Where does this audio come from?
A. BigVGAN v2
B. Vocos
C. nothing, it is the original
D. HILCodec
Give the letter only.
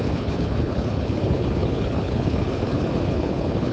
D